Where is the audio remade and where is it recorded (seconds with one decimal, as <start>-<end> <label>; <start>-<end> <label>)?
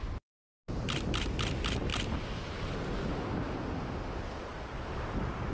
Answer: 0.0-5.5 recorded